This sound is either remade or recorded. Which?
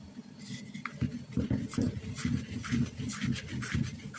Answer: recorded